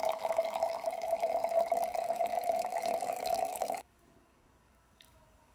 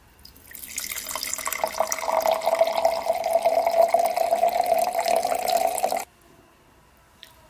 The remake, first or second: first